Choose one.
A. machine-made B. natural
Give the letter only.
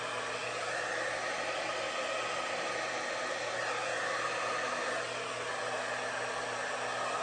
B